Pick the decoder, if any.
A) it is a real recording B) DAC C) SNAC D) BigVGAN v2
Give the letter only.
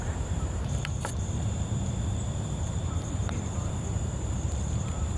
D